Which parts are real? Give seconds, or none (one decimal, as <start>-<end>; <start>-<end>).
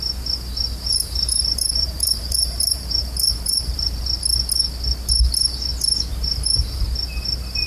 0.0-0.9; 4.0-6.1; 6.8-7.7